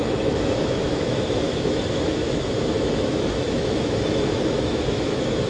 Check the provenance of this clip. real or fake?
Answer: fake